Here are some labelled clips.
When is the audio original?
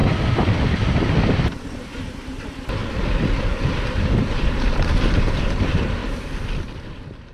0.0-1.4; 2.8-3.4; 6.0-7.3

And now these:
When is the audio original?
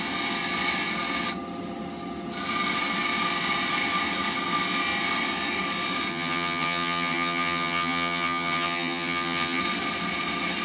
0.0-6.1; 9.6-10.6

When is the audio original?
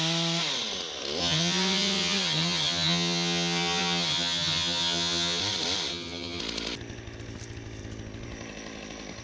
0.0-1.2; 5.4-5.9; 6.4-9.2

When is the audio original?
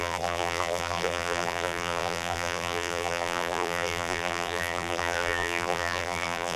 none